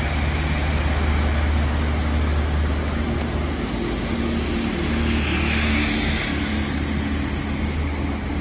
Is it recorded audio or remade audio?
recorded